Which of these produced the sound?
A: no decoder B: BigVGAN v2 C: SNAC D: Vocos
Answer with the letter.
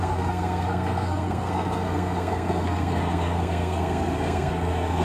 C